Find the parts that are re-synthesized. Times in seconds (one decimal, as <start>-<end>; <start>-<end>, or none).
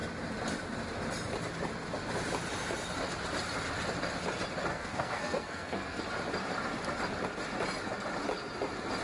4.7-6.0